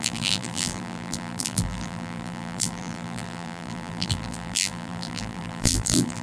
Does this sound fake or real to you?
fake